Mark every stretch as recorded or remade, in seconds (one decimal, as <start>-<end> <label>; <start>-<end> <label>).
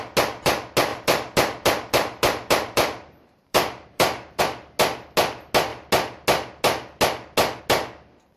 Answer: 0.0-0.9 recorded; 0.9-4.4 remade; 4.4-8.4 recorded